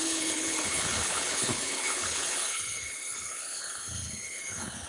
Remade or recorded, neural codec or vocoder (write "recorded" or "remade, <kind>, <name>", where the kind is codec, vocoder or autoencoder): remade, codec, HILCodec